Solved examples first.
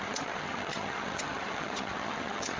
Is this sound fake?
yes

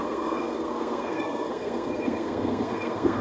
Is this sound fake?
yes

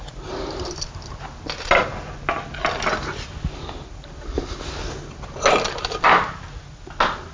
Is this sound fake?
no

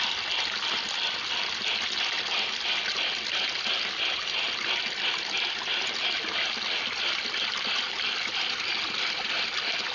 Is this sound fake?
no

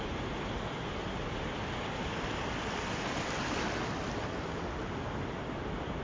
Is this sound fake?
no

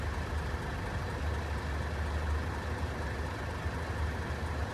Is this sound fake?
no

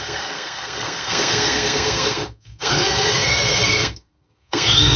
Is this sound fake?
yes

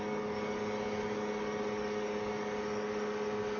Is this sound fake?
yes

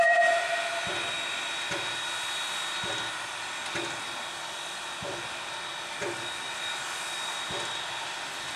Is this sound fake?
no